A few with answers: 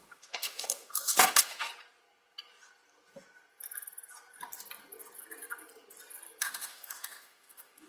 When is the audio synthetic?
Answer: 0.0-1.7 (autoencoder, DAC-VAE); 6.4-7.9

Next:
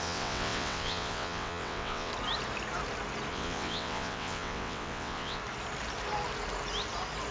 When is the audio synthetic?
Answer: 0.0-2.1 (vocoder, WaveNeXt); 3.3-5.4

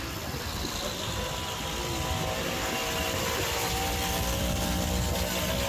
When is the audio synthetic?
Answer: none

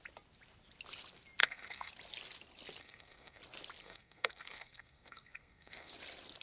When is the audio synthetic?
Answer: 1.4-1.9 (codec, SNAC); 2.8-3.4; 3.8-5.9

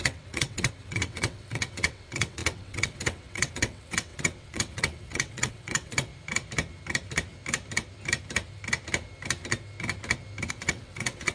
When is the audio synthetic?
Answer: 0.0-6.1 (vocoder, WaveNeXt); 10.5-11.3

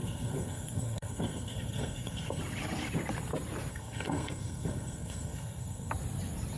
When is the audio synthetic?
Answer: 0.0-2.4 (codec, SNAC); 3.7-5.9

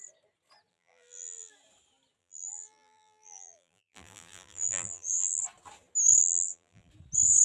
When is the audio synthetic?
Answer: 0.7-1.5 (vocoder, BigVGAN v2); 2.2-5.4; 6.2-6.9

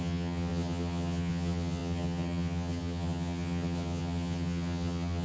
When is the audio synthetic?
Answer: 0.0-5.2 (vocoder, HiFi-GAN)